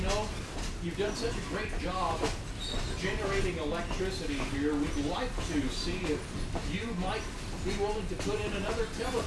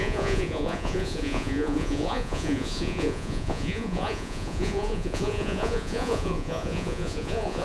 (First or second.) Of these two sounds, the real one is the first